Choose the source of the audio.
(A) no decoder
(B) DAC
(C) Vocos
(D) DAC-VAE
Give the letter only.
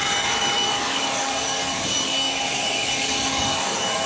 B